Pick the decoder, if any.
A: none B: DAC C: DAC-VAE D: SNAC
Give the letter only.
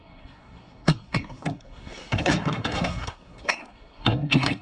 D